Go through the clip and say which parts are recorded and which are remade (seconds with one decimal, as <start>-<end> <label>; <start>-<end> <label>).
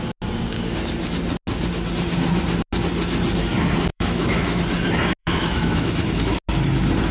0.0-3.9 recorded; 3.9-4.6 remade; 4.6-5.2 recorded; 5.2-6.3 remade; 6.3-7.1 recorded